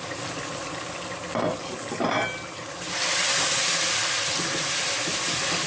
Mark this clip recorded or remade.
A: recorded